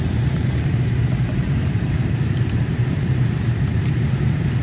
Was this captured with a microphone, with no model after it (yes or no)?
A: no